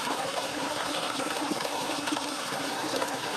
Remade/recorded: remade